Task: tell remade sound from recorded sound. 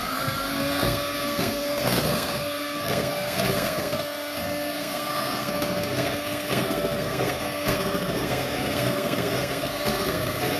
remade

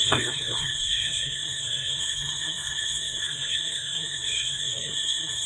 remade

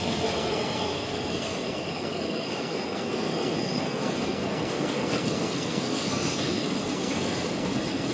remade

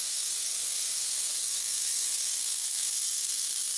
remade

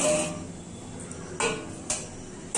recorded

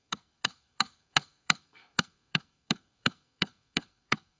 remade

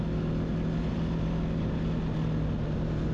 recorded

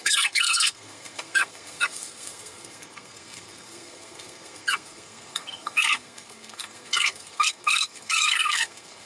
remade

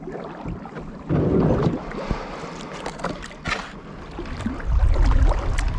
recorded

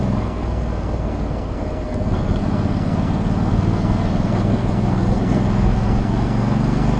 remade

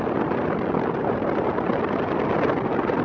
recorded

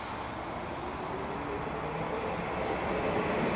recorded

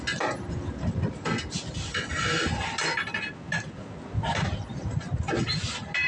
recorded